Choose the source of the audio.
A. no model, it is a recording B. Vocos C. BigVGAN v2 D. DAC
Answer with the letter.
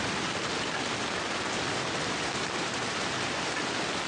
A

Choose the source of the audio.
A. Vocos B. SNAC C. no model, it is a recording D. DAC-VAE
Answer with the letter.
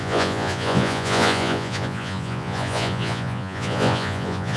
A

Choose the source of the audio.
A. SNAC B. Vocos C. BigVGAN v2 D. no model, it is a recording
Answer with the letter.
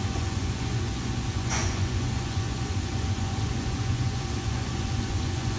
B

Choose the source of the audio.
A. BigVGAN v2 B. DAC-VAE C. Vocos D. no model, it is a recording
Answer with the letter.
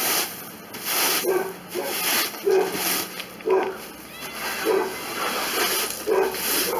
D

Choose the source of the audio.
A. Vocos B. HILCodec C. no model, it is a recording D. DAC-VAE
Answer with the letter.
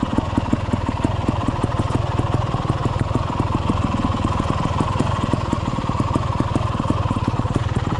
A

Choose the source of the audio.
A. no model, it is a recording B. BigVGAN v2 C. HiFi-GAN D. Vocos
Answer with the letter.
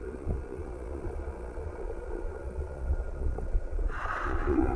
D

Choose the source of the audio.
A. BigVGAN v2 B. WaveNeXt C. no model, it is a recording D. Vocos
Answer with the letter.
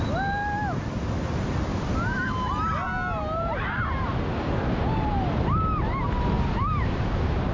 C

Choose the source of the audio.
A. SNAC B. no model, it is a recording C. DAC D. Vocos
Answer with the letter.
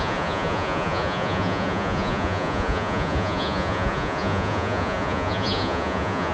D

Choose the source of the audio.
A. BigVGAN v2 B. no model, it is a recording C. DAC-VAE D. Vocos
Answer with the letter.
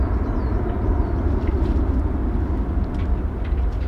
B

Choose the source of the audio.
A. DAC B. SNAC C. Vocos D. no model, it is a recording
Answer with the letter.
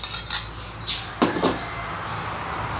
D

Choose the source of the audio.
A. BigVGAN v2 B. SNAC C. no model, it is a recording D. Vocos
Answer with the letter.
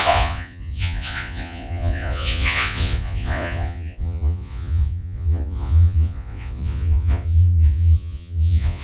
D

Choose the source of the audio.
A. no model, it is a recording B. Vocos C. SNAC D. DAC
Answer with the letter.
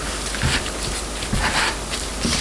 A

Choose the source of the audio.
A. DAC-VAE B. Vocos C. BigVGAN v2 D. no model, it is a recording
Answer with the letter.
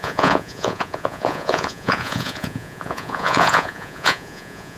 B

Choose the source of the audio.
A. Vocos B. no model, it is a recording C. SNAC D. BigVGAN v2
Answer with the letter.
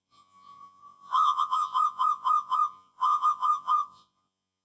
A